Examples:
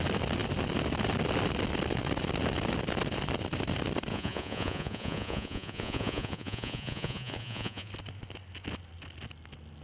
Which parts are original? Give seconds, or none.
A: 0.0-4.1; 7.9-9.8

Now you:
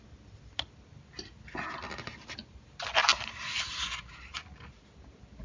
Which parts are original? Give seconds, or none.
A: 0.0-5.4